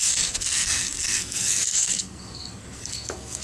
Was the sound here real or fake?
fake